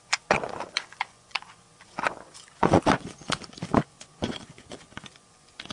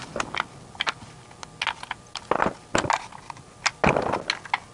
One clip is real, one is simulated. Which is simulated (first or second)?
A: first